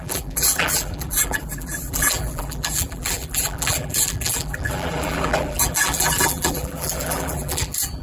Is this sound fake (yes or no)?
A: yes